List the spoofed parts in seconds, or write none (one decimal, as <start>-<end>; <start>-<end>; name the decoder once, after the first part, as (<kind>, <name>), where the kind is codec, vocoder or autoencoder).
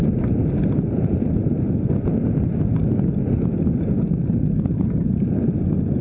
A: none